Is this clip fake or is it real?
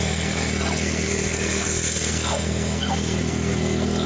fake